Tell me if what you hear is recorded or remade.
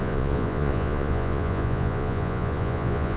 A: remade